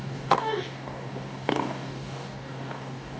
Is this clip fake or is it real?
fake